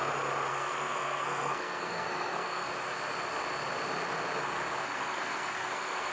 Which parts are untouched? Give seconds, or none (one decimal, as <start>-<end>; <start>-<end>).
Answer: 0.0-0.5; 2.7-4.8